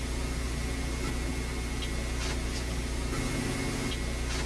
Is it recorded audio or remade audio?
recorded